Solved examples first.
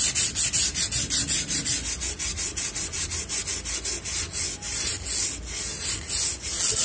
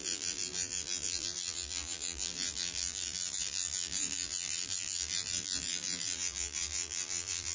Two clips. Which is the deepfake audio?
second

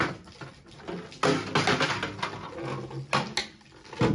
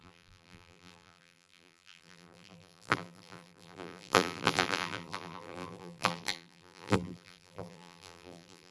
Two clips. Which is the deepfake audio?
second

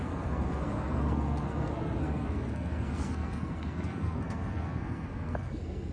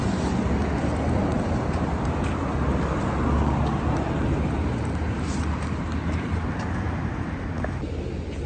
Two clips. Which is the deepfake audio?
first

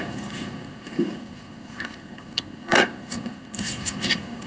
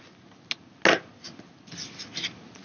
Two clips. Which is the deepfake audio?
first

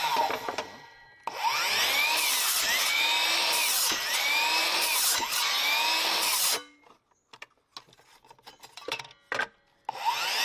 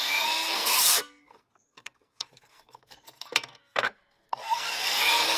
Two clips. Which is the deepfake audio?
second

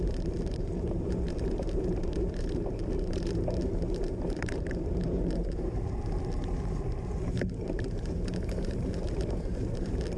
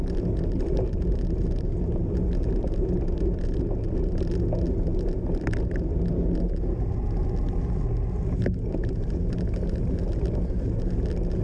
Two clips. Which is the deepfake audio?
first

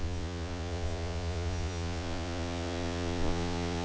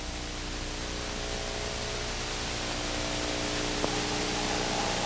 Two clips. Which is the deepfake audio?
first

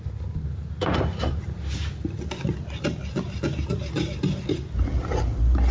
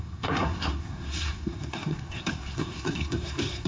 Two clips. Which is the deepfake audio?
second